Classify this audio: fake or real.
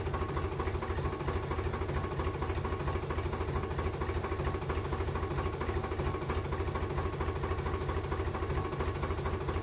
real